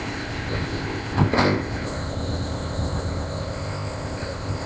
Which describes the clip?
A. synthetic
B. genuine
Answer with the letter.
A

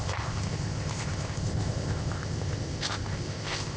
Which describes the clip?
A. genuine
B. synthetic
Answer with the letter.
B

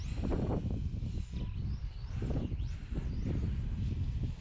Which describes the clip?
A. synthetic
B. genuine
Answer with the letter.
B